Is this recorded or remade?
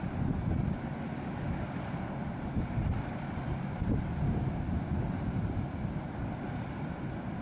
recorded